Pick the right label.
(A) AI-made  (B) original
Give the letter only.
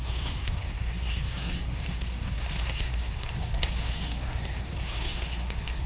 A